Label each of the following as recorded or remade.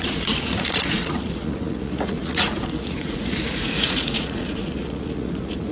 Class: remade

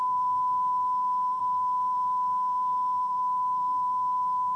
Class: remade